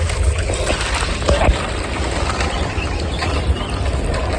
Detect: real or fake real